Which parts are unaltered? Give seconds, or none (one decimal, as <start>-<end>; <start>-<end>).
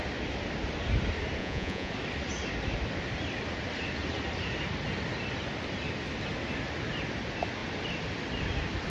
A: 0.0-1.4; 1.9-8.9